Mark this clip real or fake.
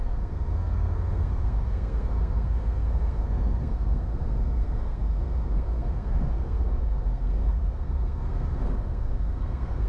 fake